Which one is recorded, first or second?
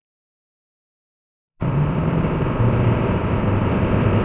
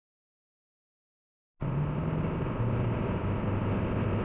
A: second